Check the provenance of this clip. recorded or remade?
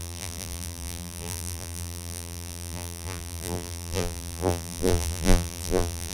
remade